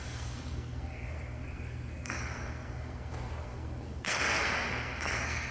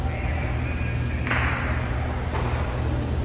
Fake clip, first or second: first